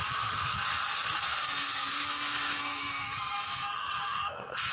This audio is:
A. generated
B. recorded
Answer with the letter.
A